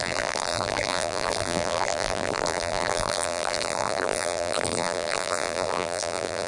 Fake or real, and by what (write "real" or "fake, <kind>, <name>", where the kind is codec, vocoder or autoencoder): fake, vocoder, BigVGAN v2